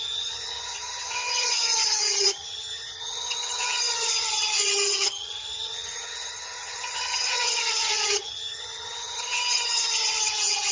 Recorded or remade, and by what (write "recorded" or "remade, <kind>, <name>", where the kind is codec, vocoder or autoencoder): remade, vocoder, HiFi-GAN